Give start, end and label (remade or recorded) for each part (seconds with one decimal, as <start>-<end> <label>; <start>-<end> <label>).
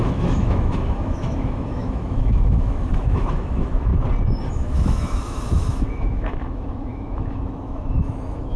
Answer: 0.0-3.9 remade; 3.9-4.5 recorded; 4.5-8.6 remade